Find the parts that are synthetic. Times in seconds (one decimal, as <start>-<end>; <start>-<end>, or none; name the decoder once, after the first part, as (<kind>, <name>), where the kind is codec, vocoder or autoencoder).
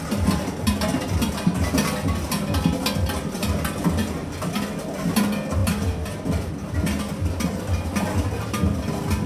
none